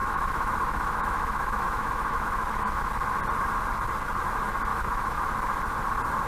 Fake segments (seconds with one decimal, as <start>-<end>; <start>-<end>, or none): 0.0-2.9; 4.7-5.2